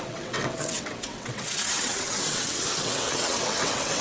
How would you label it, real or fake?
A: fake